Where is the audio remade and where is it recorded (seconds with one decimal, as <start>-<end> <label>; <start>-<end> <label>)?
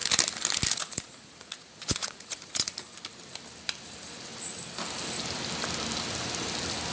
0.0-0.7 recorded; 0.7-2.7 remade; 2.7-6.9 recorded